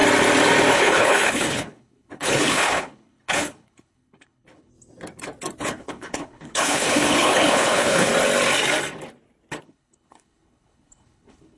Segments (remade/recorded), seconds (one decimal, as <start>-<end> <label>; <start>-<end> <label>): 0.0-0.7 recorded; 0.7-4.7 remade; 4.7-5.6 recorded; 5.6-8.1 remade; 8.1-9.6 recorded; 9.6-11.6 remade